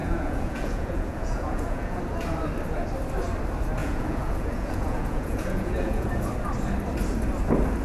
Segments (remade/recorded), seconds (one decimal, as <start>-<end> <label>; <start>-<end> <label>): 0.0-2.0 remade; 2.0-3.8 recorded; 3.8-6.1 remade; 6.1-7.8 recorded